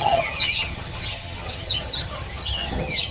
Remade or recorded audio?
remade